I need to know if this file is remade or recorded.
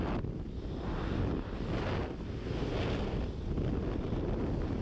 recorded